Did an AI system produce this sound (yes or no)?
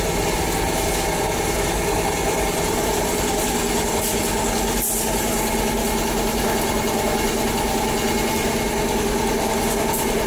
no